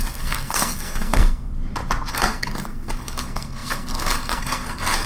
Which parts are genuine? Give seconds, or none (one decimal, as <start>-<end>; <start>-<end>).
1.5-2.1